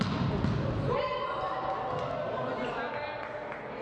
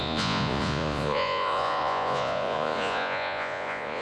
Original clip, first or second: first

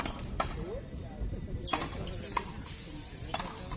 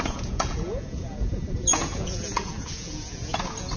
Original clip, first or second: first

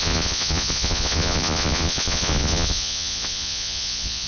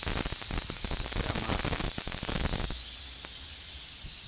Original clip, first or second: second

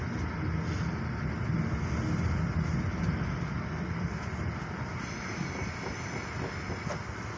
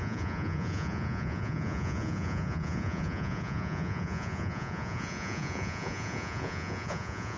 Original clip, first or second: first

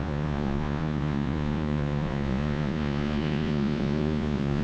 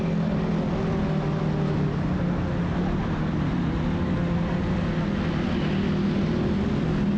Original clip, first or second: second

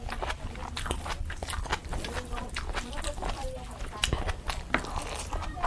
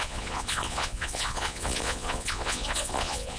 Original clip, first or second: first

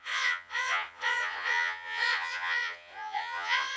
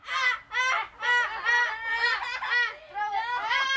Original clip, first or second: second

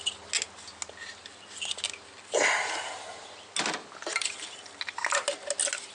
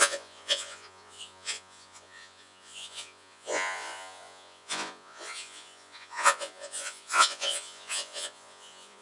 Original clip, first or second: first